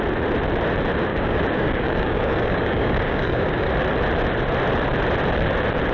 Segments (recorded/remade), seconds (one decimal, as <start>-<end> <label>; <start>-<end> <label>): 0.0-1.1 recorded; 1.1-3.7 remade; 3.7-5.9 recorded